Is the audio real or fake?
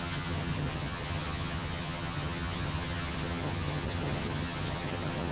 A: fake